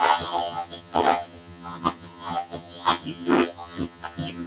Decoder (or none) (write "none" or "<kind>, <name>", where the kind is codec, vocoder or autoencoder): vocoder, HiFi-GAN